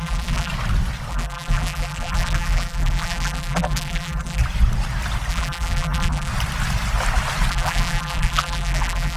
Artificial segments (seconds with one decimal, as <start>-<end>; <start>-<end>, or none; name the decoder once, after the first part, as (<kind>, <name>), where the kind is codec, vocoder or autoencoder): 0.0-0.5 (vocoder, BigVGAN v2); 1.1-4.4; 5.3-6.3; 7.5-9.2